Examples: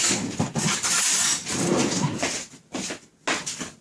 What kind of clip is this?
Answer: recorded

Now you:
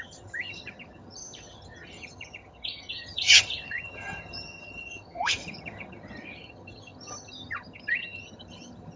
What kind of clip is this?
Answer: remade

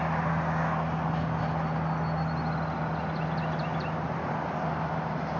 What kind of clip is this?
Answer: recorded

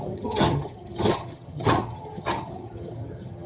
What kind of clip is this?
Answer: remade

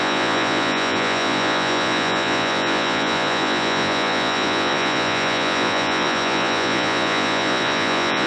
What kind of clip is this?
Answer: remade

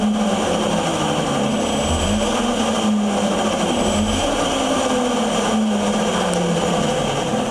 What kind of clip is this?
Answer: recorded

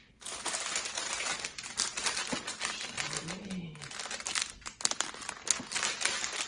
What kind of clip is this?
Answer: recorded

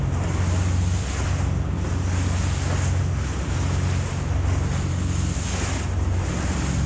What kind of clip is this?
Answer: recorded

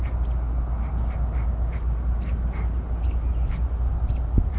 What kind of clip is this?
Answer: recorded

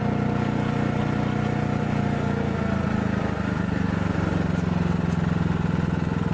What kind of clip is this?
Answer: recorded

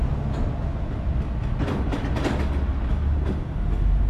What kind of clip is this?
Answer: recorded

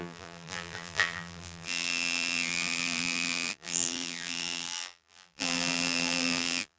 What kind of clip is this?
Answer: remade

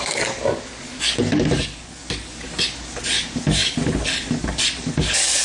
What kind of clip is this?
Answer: remade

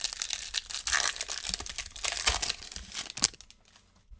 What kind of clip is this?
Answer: recorded